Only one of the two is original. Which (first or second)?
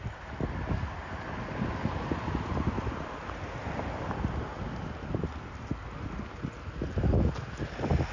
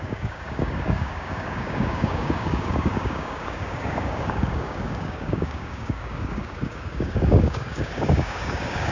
first